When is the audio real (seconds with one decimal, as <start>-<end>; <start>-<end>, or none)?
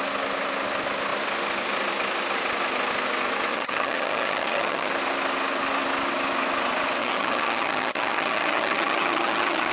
0.0-3.5; 4.9-7.0